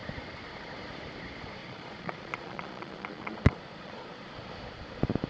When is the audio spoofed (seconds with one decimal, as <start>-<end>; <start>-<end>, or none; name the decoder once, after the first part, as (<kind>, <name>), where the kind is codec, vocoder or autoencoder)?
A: 1.6-4.5 (vocoder, Vocos)